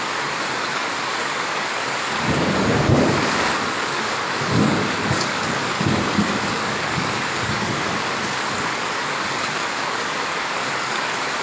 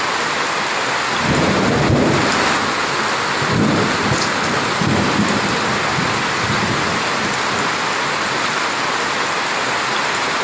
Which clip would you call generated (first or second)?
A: first